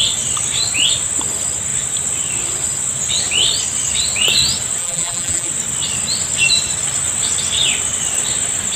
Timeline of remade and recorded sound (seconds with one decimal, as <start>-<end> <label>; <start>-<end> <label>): 0.0-4.8 recorded; 4.8-5.5 remade; 5.5-8.8 recorded